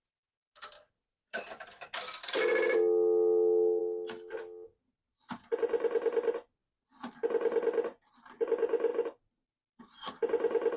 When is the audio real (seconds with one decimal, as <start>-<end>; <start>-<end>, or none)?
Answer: 0.0-8.9; 10.1-10.8